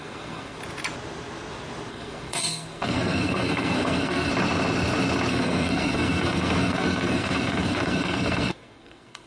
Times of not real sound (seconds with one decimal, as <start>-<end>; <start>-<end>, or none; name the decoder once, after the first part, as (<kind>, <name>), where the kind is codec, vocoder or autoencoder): 0.0-0.6 (codec, SNAC); 1.9-4.3; 5.3-9.3